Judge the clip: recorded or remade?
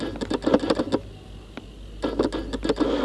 recorded